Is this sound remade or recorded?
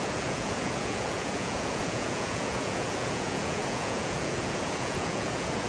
remade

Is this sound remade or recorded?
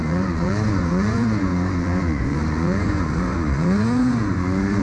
remade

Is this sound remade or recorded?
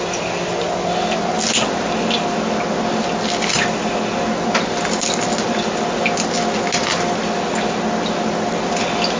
recorded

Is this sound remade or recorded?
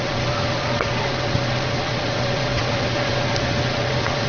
remade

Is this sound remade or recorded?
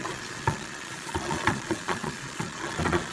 remade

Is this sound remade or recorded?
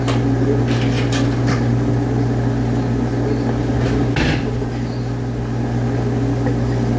recorded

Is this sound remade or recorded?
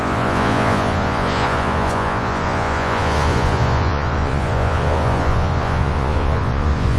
remade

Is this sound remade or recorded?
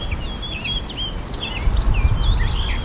recorded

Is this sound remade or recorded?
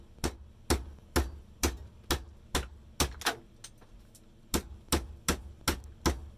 recorded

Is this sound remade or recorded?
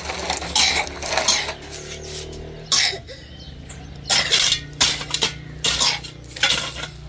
recorded